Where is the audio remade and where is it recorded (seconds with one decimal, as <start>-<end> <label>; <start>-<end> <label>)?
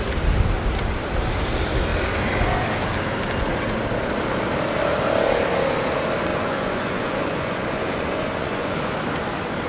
0.0-6.3 recorded; 6.3-8.9 remade; 8.9-9.7 recorded